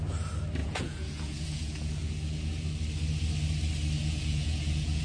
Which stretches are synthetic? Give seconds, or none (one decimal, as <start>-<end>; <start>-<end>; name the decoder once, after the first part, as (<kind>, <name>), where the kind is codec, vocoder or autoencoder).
0.6-2.7 (vocoder, Vocos); 4.0-5.0

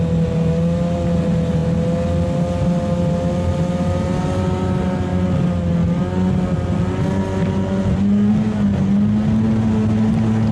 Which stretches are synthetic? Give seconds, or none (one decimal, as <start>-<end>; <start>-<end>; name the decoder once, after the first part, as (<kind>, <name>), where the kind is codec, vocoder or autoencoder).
none

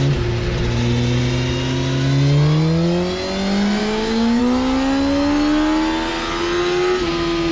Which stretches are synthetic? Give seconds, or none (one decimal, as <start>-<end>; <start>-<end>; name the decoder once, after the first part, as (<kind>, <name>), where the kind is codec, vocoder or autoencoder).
3.8-4.4 (codec, DAC)

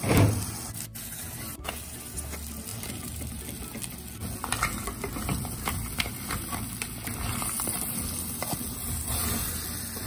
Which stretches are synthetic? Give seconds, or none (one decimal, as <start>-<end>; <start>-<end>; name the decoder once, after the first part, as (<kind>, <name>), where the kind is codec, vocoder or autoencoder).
2.7-3.4 (vocoder, BigVGAN v2)

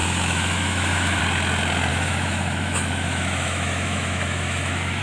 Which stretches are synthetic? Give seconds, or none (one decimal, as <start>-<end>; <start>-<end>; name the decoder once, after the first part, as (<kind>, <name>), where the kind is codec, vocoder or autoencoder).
0.0-1.2 (autoencoder, DAC-VAE); 1.9-5.0

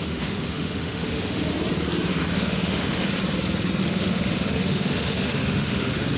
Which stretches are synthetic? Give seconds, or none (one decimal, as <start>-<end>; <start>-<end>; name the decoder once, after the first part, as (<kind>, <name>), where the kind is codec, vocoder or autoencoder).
0.0-1.5 (autoencoder, DAC-VAE); 2.1-3.1; 3.8-6.2

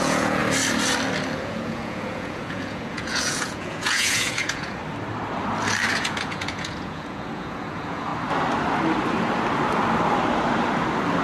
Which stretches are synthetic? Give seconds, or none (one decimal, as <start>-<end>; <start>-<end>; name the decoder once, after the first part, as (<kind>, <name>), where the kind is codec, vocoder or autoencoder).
0.0-0.4 (vocoder, Vocos); 1.4-4.8; 5.9-8.1